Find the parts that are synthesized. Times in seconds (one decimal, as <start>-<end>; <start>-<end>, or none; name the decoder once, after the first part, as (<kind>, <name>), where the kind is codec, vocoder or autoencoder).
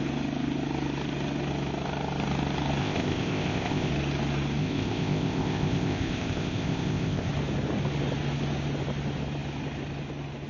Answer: 2.8-3.9 (codec, ZipCodec); 4.6-7.3